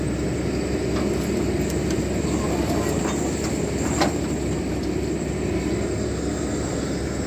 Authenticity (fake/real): real